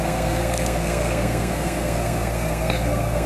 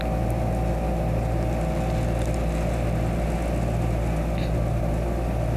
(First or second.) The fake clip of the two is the first